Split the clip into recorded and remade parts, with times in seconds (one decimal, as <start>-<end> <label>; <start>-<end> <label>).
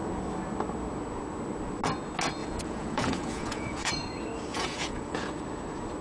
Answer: 0.0-2.4 recorded; 2.4-3.9 remade; 3.9-4.5 recorded; 4.5-5.3 remade; 5.3-6.0 recorded